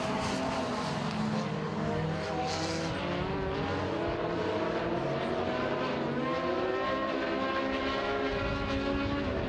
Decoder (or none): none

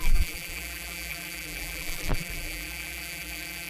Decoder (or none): vocoder, BigVGAN v2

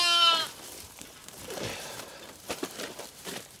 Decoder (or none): vocoder, BigVGAN v2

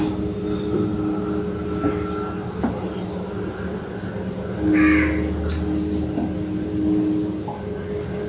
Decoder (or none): none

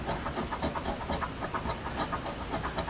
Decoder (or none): none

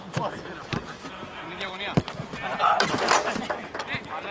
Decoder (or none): none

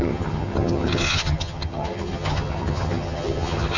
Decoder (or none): vocoder, HiFi-GAN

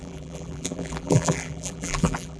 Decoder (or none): vocoder, BigVGAN v2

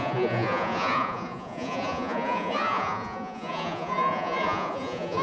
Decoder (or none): vocoder, Vocos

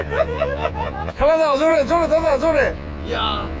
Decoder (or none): vocoder, Vocos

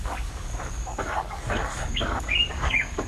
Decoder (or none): codec, DAC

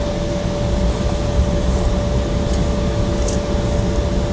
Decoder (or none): none